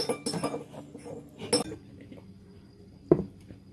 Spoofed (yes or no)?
no